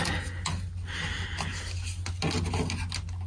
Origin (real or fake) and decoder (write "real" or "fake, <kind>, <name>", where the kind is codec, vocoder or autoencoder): real